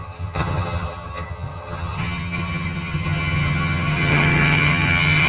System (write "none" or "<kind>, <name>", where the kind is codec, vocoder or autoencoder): vocoder, HiFi-GAN